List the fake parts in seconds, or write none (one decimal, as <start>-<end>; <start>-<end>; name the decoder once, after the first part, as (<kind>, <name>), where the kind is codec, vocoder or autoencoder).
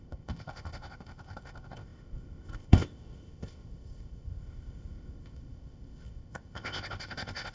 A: 0.0-7.5 (codec, ZipCodec)